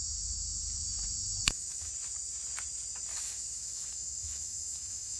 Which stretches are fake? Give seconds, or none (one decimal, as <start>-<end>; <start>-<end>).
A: 1.4-1.9; 3.1-5.2